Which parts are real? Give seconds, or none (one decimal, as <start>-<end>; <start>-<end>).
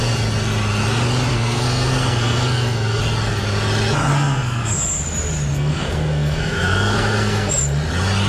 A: 0.0-1.3; 3.0-4.1; 5.0-5.5; 7.5-8.3